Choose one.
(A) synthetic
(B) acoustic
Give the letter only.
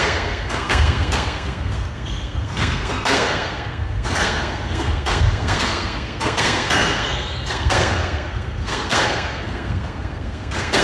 A